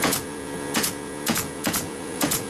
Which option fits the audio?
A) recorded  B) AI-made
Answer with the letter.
B